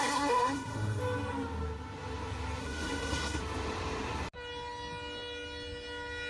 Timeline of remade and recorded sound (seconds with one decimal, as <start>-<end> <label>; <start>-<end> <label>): 0.0-1.0 remade; 1.0-2.6 recorded; 2.6-3.4 remade; 3.4-6.3 recorded